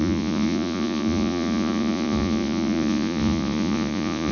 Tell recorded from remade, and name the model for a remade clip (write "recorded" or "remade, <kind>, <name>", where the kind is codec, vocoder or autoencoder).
remade, vocoder, Vocos